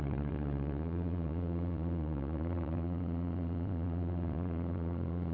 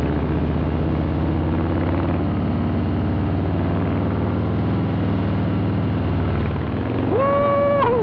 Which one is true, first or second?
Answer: second